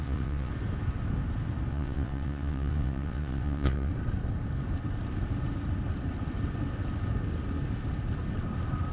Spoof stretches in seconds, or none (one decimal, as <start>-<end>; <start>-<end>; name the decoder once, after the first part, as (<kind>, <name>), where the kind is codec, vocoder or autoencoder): 0.0-0.5 (vocoder, WaveNeXt); 1.7-3.9